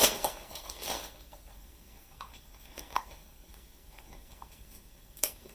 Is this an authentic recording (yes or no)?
no